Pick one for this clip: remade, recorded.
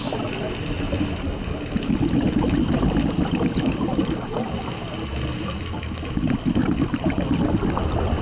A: recorded